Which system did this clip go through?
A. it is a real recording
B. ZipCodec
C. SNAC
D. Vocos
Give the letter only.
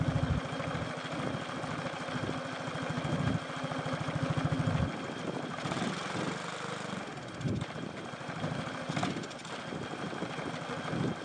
A